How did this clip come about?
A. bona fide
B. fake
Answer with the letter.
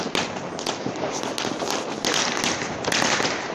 A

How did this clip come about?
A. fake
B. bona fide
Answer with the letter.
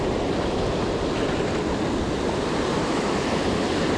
B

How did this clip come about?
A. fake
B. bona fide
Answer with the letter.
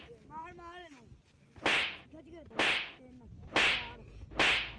B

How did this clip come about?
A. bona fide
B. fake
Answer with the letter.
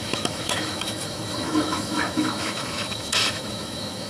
B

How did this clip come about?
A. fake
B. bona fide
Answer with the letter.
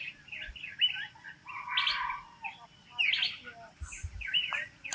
B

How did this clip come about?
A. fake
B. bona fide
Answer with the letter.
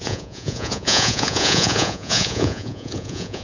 A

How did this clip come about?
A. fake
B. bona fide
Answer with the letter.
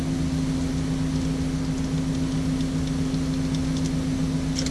B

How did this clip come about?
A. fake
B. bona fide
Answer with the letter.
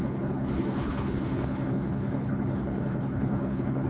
A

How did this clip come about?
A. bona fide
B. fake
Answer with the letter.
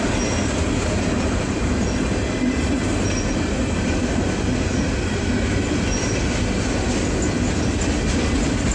A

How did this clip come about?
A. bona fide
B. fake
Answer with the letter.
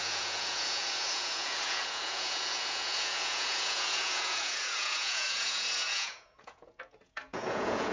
B